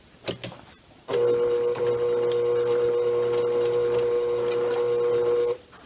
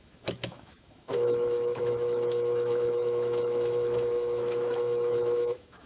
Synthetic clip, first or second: second